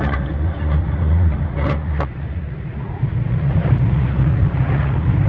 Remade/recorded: remade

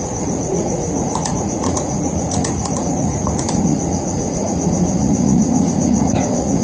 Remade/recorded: remade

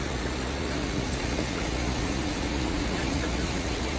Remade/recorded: remade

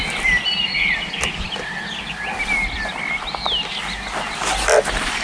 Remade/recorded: recorded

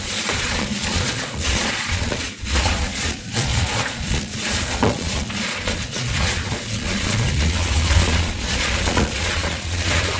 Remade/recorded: remade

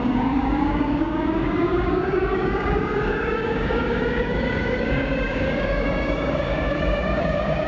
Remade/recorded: remade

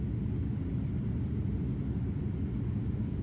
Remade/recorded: recorded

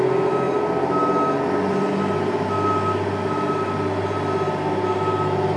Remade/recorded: recorded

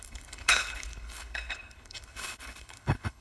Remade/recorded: remade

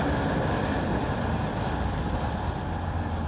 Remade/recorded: recorded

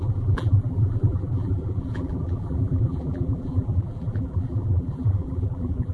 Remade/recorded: remade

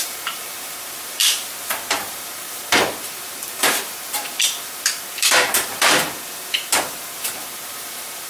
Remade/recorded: remade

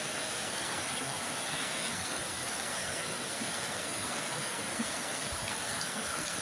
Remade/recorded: remade